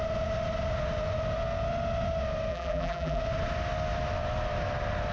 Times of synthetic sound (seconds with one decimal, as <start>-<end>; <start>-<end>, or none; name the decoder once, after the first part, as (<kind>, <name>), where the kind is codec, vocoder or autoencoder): 2.5-3.2 (vocoder, BigVGAN v2)